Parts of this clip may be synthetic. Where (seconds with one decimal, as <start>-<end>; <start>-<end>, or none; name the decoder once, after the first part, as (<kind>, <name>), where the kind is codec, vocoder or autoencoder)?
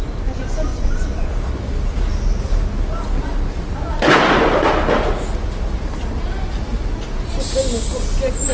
0.7-1.3 (vocoder, Vocos)